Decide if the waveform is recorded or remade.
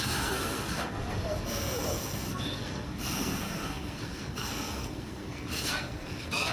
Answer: remade